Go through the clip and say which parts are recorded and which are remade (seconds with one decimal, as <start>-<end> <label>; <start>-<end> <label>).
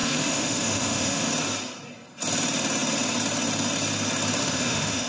0.0-1.3 remade; 1.3-4.4 recorded; 4.4-5.1 remade